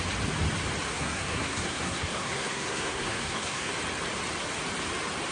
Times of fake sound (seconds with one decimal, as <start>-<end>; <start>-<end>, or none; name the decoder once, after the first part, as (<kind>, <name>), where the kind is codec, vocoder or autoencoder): 0.9-3.7 (codec, SNAC)